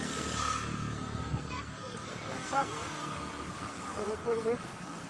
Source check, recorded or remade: remade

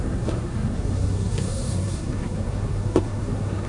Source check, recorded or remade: remade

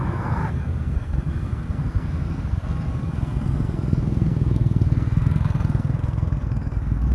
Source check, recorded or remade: remade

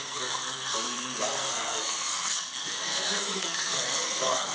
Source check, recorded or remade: remade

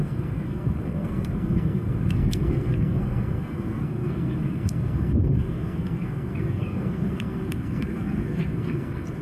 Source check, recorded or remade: remade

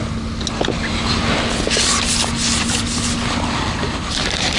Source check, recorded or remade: recorded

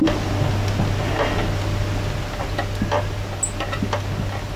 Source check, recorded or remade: recorded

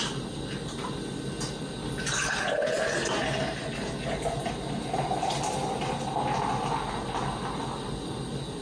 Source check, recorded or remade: recorded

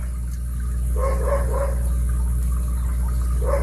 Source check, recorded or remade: recorded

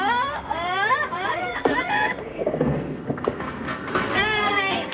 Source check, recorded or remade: remade